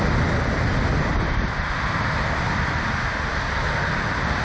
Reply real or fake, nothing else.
real